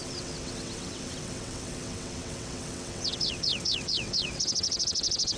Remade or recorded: remade